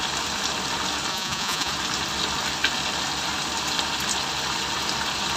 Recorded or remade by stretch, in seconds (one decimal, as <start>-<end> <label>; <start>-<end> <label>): 0.0-1.1 recorded; 1.1-1.7 remade; 1.7-5.4 recorded